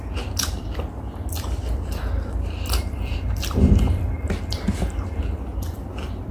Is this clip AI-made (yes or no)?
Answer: yes